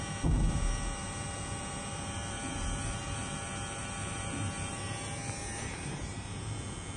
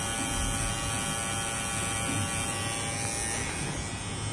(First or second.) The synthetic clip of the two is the first